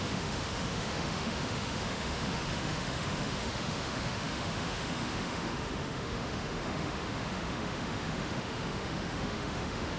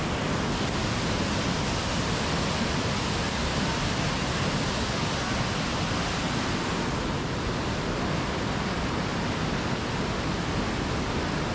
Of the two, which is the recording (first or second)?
second